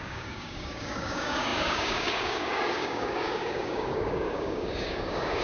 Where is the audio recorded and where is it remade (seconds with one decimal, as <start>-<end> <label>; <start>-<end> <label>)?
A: 0.0-5.4 remade

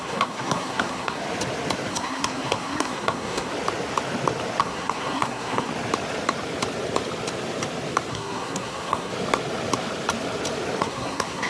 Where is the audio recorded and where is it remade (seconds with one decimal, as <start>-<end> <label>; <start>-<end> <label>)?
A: 0.0-1.2 remade; 1.2-1.9 recorded; 1.9-3.5 remade; 3.5-4.6 recorded; 4.6-5.7 remade; 5.7-8.1 recorded; 8.1-9.1 remade; 9.1-10.8 recorded; 10.8-11.5 remade

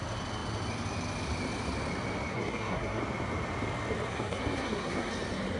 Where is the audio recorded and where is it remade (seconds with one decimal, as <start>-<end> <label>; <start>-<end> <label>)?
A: 0.0-2.3 recorded; 2.3-3.0 remade; 3.0-4.1 recorded; 4.1-5.1 remade; 5.1-5.6 recorded

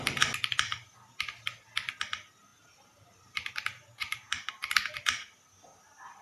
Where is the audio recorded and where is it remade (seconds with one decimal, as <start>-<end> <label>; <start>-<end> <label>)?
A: 0.0-2.5 recorded; 2.5-4.5 remade; 4.5-6.2 recorded

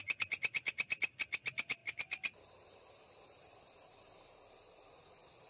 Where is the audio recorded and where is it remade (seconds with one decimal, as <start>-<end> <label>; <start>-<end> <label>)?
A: 0.0-5.5 recorded

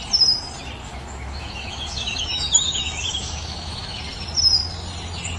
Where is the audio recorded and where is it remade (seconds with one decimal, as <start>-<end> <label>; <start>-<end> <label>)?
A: 0.0-0.8 recorded; 0.8-4.0 remade; 4.0-5.4 recorded